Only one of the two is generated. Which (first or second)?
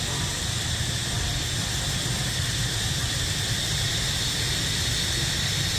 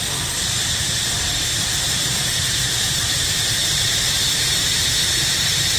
second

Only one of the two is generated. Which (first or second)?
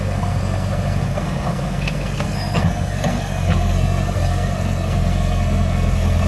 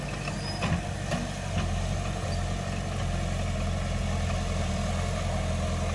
first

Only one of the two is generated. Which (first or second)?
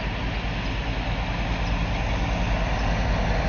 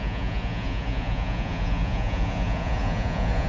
second